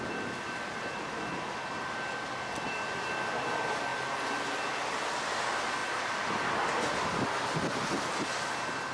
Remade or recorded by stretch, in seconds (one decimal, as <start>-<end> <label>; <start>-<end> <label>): 0.0-8.9 recorded

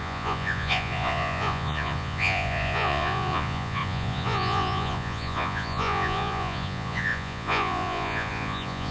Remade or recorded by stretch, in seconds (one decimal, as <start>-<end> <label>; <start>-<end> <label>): 0.0-8.9 remade

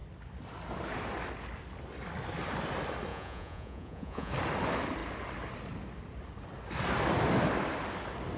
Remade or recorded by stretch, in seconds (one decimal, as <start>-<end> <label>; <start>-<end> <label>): 0.0-3.1 recorded; 3.1-4.3 remade; 4.3-8.4 recorded

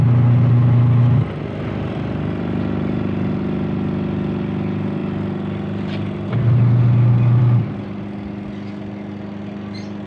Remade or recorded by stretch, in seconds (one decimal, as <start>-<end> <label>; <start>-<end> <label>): 0.0-10.1 recorded

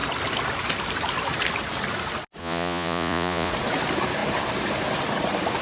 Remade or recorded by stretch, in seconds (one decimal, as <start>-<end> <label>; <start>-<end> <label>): 0.0-2.4 recorded; 2.4-3.5 remade; 3.5-5.6 recorded